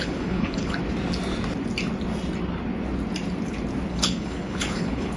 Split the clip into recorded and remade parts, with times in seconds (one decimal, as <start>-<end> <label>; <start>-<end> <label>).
0.0-0.8 remade; 0.8-3.9 recorded; 3.9-5.2 remade